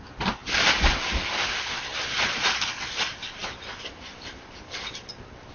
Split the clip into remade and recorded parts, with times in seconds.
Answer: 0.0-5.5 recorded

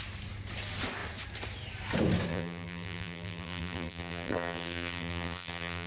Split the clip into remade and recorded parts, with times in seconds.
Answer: 0.0-2.3 recorded; 2.3-5.9 remade

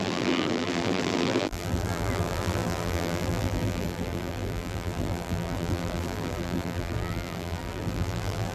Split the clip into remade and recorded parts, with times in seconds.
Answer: 0.0-8.5 remade

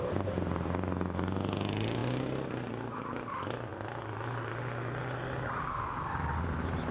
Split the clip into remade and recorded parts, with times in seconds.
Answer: 0.0-6.9 recorded

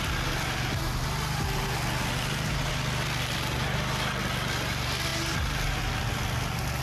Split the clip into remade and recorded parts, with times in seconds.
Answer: 0.0-6.8 recorded

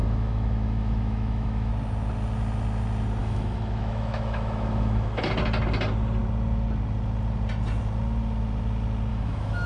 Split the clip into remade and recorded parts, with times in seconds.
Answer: 0.0-1.7 remade; 1.7-3.2 recorded; 3.2-5.2 remade; 5.2-9.1 recorded; 9.1-9.7 remade

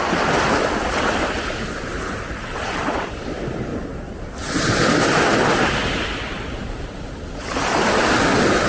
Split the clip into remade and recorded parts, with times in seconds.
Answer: 0.0-8.7 recorded

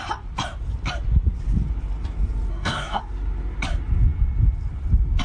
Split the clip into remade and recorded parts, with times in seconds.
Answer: 0.0-2.5 recorded; 2.5-3.0 remade; 3.0-5.2 recorded